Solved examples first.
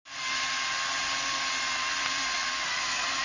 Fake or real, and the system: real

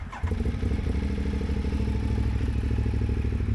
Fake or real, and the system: real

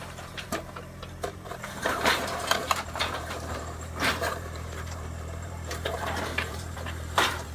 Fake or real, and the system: fake, vocoder, BigVGAN v2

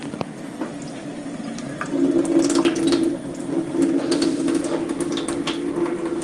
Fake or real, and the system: real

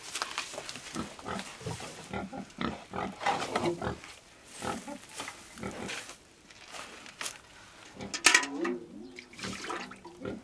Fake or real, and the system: real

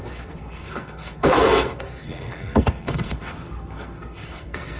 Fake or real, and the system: fake, codec, SNAC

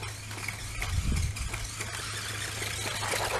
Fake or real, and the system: real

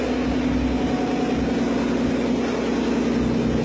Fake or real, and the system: real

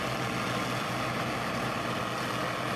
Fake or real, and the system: real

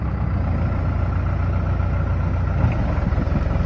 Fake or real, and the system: real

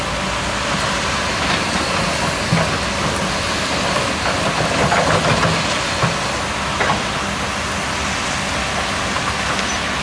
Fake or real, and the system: real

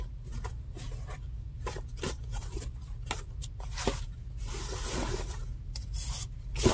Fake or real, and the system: real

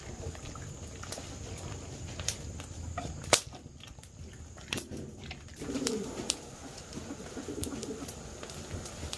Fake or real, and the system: real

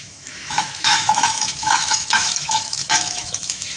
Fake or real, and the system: fake, autoencoder, DAC-VAE